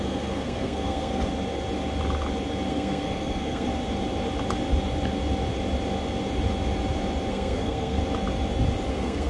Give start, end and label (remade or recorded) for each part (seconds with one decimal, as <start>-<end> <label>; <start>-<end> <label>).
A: 0.0-1.3 remade; 1.3-2.7 recorded; 2.7-3.7 remade; 3.7-7.3 recorded; 7.3-8.0 remade; 8.0-8.9 recorded; 8.9-9.3 remade